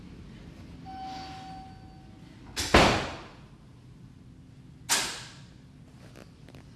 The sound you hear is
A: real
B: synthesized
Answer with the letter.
A